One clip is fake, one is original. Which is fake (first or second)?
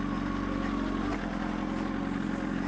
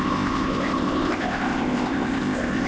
second